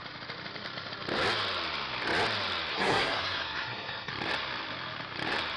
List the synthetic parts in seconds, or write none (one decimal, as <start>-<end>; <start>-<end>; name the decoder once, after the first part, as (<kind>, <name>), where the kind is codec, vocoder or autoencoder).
2.7-4.1 (codec, SNAC)